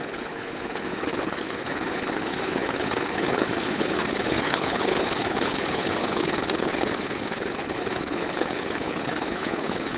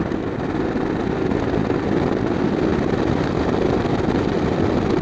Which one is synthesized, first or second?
first